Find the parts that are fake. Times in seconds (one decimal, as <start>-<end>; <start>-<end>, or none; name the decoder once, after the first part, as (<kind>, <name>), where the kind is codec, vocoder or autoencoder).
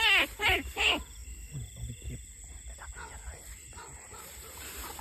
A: 3.5-5.0 (vocoder, BigVGAN v2)